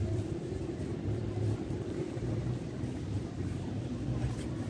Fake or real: fake